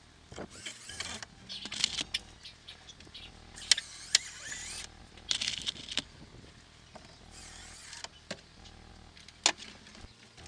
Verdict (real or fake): real